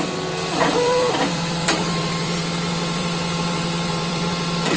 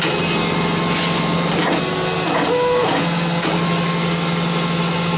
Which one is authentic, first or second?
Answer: second